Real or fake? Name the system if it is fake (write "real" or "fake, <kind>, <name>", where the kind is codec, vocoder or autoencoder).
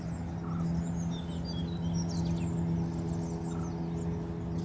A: real